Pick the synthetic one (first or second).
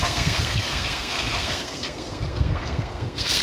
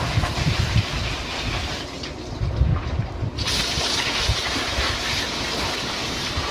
first